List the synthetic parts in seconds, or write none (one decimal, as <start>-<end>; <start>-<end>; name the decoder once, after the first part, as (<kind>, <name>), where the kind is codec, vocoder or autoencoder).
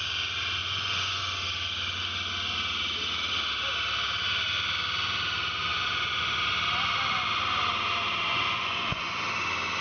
0.6-1.2 (vocoder, Vocos); 5.7-6.4; 8.3-9.2